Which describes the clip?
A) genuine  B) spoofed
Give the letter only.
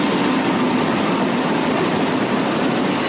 B